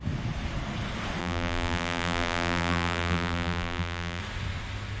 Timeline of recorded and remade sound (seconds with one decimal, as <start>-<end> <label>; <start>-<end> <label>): 0.0-1.2 recorded; 1.2-4.2 remade; 4.2-5.0 recorded